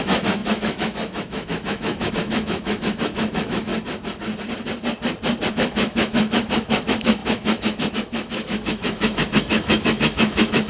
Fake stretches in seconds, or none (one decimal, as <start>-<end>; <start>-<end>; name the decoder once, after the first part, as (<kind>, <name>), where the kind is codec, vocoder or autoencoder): 0.0-3.7 (autoencoder, DAC-VAE); 5.5-10.7